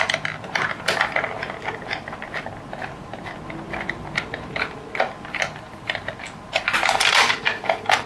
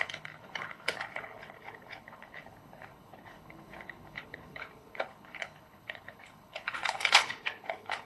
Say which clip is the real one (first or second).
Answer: first